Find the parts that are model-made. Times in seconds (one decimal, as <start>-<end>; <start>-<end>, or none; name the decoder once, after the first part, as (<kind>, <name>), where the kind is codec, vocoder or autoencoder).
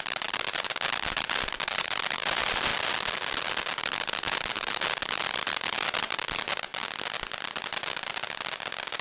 0.0-2.7 (vocoder, BigVGAN v2); 3.8-6.7